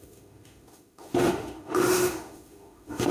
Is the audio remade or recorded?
remade